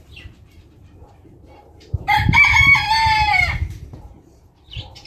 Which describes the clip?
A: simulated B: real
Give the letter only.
A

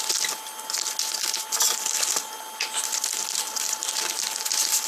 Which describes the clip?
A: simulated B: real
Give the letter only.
B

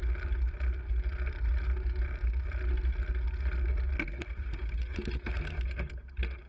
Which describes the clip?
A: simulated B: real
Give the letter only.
B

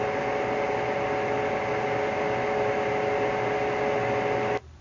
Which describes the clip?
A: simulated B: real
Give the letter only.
B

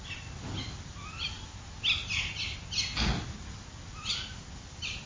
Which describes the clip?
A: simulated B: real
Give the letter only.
B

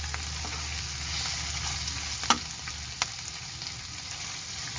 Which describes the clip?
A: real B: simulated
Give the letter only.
A